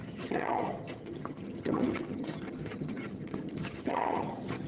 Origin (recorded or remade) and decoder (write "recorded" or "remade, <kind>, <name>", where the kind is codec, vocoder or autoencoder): remade, vocoder, HiFi-GAN